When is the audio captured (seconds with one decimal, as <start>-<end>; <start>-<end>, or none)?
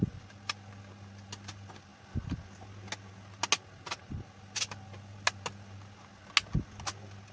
0.0-7.3